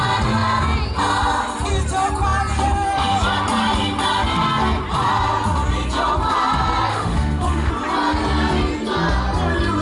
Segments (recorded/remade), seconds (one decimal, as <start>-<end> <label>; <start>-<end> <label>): 0.0-6.9 recorded; 6.9-7.7 remade; 7.7-9.8 recorded